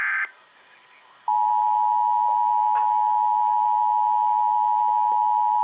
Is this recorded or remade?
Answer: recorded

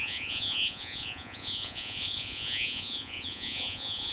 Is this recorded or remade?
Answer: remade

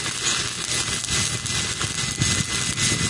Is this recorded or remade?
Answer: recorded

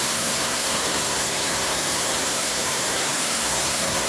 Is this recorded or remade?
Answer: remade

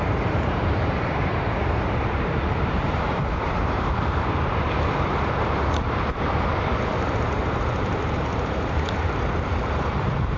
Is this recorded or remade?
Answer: remade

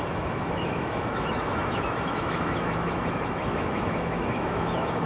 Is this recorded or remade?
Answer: remade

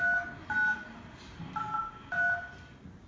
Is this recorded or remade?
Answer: recorded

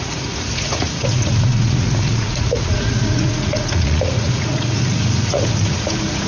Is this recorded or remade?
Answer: remade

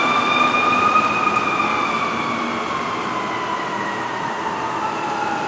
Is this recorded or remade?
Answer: recorded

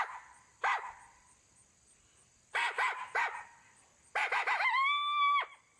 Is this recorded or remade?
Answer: recorded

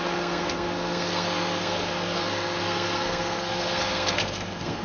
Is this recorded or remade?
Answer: remade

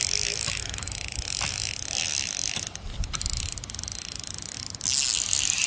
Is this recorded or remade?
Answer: recorded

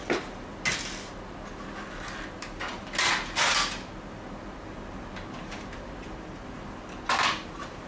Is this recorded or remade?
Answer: recorded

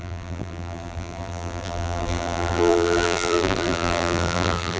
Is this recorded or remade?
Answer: remade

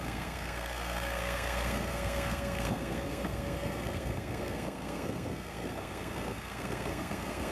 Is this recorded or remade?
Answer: remade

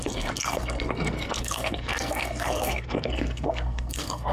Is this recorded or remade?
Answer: remade